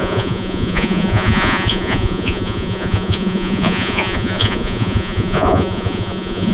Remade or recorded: remade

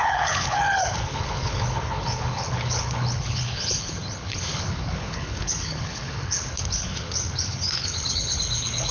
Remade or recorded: remade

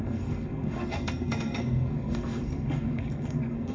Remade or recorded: remade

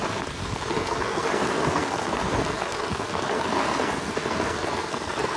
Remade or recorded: remade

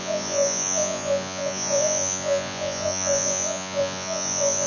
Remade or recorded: remade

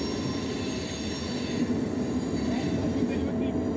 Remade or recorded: recorded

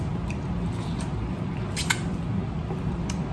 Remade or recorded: recorded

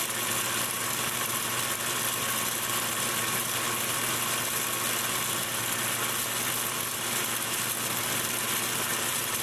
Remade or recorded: recorded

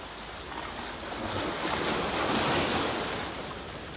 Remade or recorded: recorded